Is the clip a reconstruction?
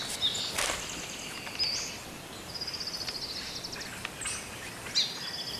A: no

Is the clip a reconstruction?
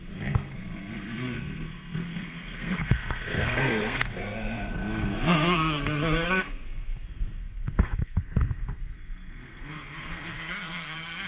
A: yes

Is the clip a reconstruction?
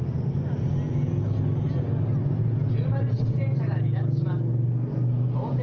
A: no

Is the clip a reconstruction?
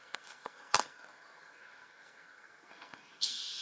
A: yes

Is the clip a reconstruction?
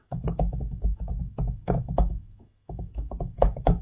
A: yes